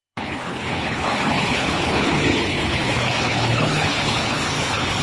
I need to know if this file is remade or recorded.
remade